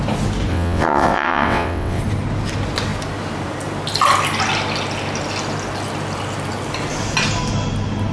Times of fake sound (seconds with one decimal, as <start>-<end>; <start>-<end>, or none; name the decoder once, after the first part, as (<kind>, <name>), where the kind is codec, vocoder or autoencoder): 0.5-2.0 (vocoder, WaveNeXt)